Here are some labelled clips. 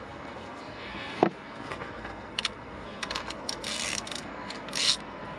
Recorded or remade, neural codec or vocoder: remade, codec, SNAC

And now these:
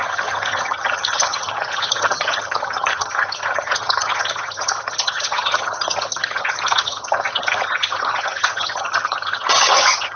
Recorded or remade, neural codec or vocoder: remade, vocoder, HiFi-GAN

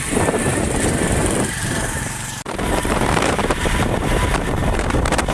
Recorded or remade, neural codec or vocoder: remade, vocoder, BigVGAN v2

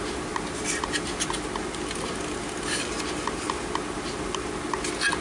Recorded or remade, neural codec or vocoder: recorded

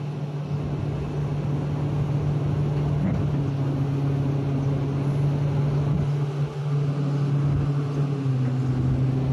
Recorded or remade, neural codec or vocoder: recorded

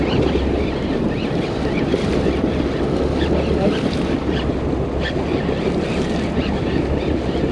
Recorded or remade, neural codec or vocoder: recorded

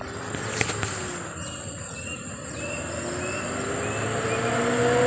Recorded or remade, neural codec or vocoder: recorded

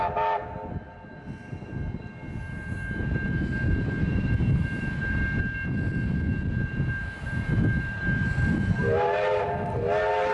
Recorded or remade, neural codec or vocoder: recorded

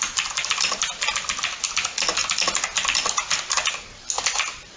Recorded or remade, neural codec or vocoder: recorded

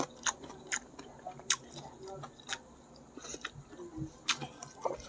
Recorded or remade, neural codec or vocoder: recorded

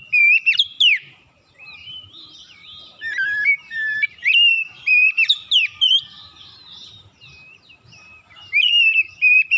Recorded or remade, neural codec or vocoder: remade, vocoder, BigVGAN v2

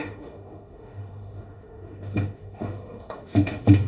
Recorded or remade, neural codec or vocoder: remade, autoencoder, DAC-VAE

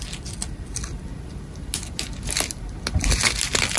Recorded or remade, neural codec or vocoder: recorded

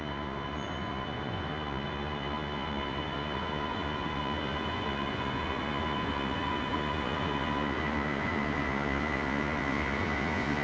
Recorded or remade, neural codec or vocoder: remade, vocoder, Vocos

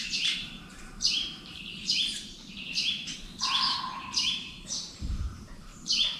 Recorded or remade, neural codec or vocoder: remade, vocoder, BigVGAN v2